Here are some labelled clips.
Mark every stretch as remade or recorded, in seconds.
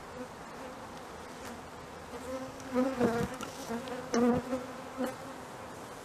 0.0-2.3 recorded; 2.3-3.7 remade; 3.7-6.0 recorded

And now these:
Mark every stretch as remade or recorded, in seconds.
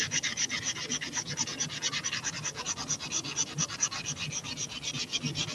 0.0-5.5 recorded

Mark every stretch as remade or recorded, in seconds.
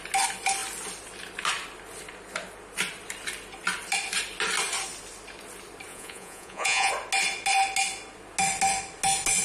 0.0-5.9 recorded; 5.9-6.9 remade; 6.9-9.4 recorded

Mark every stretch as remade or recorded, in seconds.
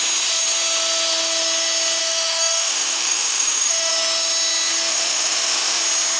0.0-2.0 recorded; 2.0-3.9 remade; 3.9-4.9 recorded; 4.9-5.8 remade; 5.8-6.2 recorded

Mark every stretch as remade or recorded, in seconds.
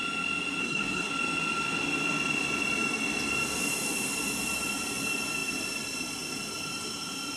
0.0-0.6 recorded; 0.6-1.1 remade; 1.1-7.4 recorded